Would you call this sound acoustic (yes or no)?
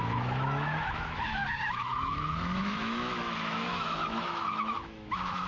no